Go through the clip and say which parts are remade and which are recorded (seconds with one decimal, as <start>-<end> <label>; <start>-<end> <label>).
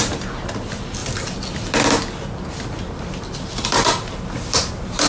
0.0-5.1 recorded